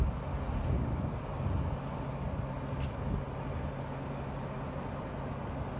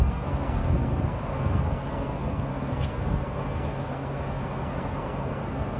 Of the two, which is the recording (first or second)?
first